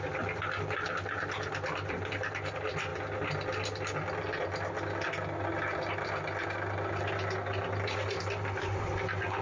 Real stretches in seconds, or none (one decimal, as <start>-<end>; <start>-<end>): 0.0-9.4